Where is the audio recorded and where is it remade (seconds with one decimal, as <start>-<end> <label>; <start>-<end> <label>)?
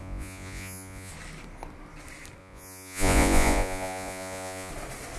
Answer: 0.0-1.1 remade; 1.1-2.4 recorded; 2.4-4.7 remade; 4.7-5.2 recorded